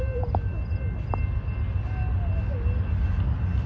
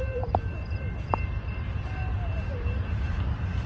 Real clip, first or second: first